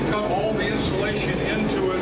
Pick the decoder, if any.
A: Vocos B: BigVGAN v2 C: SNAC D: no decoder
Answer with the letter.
D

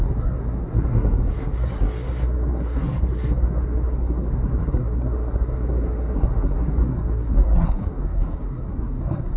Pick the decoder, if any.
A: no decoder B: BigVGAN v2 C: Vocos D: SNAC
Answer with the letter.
D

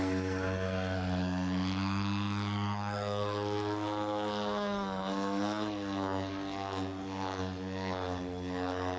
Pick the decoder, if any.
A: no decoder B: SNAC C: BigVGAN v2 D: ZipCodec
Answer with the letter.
B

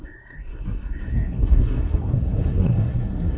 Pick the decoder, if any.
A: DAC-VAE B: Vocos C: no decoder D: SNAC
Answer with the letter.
D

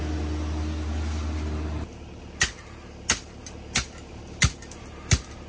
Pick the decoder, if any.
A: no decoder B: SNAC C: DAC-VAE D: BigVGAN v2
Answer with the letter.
A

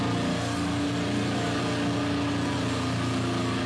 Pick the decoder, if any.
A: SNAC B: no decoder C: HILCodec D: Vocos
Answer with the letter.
B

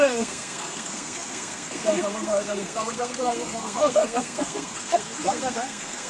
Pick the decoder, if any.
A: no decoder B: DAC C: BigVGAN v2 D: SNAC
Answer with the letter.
D